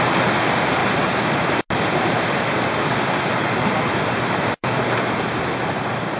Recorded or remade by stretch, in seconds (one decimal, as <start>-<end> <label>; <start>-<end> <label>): 0.0-0.8 remade; 0.8-3.3 recorded; 3.3-6.2 remade